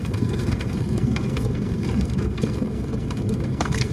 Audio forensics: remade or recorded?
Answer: remade